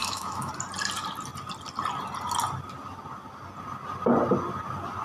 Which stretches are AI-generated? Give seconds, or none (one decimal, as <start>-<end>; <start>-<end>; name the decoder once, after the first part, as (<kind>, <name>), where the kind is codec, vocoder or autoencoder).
0.0-0.5 (autoencoder, DAC-VAE)